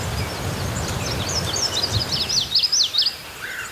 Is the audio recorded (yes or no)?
yes